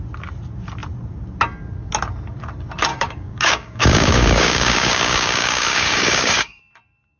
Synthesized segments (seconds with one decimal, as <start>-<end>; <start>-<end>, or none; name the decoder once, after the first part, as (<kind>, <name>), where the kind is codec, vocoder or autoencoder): 2.9-6.6 (codec, DAC)